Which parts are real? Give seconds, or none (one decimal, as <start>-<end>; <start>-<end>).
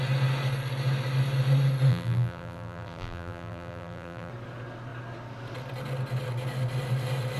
0.0-1.9; 4.3-7.4